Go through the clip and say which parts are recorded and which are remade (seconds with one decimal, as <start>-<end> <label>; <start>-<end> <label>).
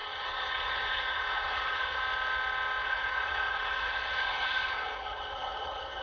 0.0-2.0 remade; 2.0-2.8 recorded; 2.8-6.0 remade